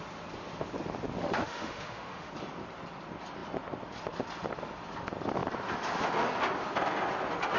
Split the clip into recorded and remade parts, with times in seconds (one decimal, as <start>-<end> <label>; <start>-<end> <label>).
0.0-1.2 recorded; 1.2-2.3 remade; 2.3-7.6 recorded